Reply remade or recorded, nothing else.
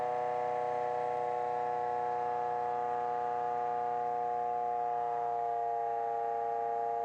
recorded